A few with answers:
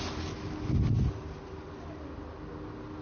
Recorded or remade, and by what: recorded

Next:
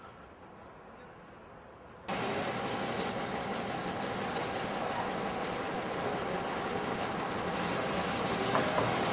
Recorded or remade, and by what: recorded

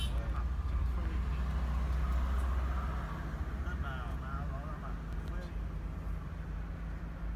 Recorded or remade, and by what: recorded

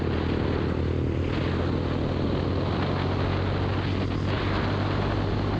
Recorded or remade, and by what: recorded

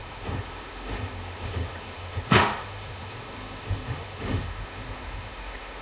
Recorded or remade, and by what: remade, autoencoder, DAC-VAE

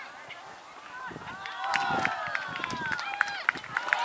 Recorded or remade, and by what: recorded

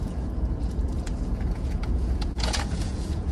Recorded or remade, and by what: remade, vocoder, Vocos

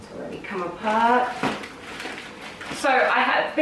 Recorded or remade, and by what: recorded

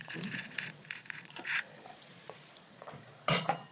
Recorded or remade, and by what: remade, vocoder, Vocos